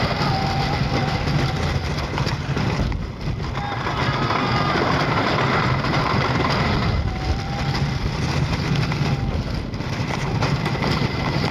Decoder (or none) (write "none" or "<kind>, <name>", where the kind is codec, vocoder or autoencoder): none